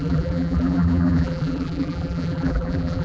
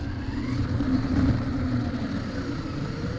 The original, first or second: second